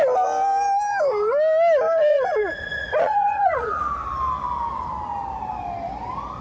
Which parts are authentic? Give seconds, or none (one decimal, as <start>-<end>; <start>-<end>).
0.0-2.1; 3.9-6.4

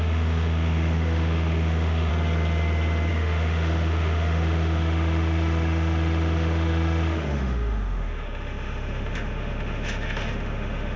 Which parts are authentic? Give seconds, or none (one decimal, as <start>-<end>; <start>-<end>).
2.1-3.1

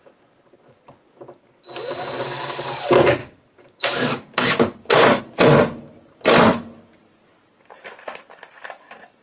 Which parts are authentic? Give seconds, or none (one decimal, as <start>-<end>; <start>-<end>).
0.0-3.2; 5.2-9.2